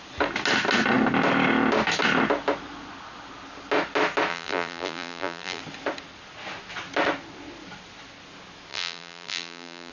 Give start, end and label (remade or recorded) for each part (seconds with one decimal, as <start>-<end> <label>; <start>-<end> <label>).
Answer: 0.0-4.3 recorded; 4.3-5.6 remade; 5.6-8.7 recorded; 8.7-9.9 remade

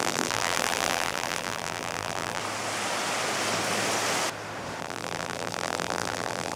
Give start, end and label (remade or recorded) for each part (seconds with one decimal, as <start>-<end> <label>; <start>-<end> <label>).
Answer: 0.0-2.4 remade; 2.4-4.8 recorded; 4.8-6.6 remade

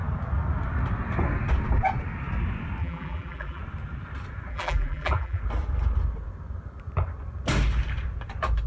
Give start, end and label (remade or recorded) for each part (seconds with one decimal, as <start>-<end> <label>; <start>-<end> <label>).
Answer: 0.0-2.8 recorded; 2.8-3.6 remade; 3.6-4.5 recorded; 4.5-5.4 remade; 5.4-8.7 recorded

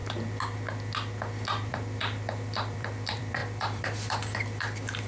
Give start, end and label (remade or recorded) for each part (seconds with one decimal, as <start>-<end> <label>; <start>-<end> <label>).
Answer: 0.0-1.7 recorded; 1.7-5.1 remade

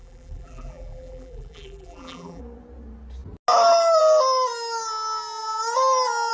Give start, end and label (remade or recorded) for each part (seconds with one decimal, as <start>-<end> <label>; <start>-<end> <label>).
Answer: 0.0-2.4 remade; 2.4-6.3 recorded

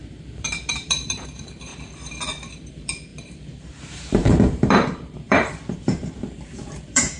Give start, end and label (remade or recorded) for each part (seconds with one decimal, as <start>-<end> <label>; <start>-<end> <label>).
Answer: 0.0-1.7 remade; 1.7-2.7 recorded; 2.7-7.2 remade

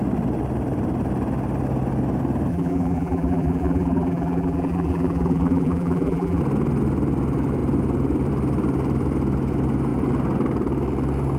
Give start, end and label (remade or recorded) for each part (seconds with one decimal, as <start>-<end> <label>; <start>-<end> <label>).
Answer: 0.0-2.5 recorded; 2.5-6.4 remade; 6.4-11.4 recorded